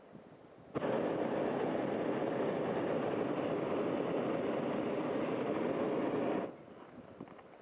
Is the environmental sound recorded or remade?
recorded